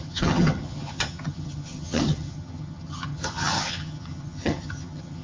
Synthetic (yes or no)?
yes